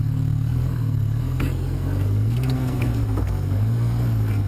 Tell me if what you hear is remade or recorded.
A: remade